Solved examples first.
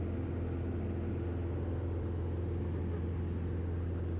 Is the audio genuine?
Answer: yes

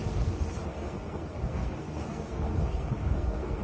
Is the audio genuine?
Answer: no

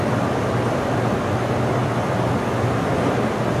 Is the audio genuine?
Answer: yes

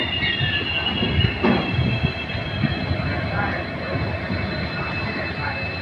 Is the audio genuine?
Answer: yes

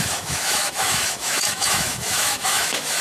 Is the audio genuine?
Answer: no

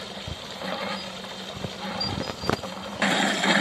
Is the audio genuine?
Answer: yes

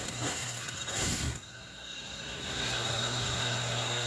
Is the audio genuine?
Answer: no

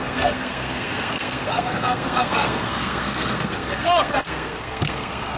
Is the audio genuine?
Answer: no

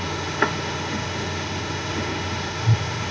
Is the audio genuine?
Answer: no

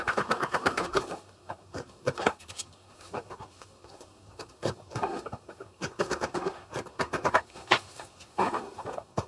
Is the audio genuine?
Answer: no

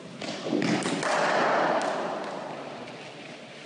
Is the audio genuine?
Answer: yes